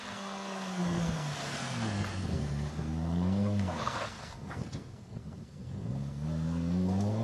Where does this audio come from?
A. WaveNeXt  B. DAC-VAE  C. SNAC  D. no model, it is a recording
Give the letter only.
C